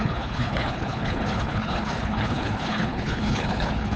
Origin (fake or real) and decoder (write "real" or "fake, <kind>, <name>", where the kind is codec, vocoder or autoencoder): fake, codec, HILCodec